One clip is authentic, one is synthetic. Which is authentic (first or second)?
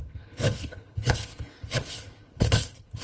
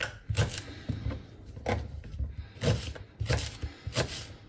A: second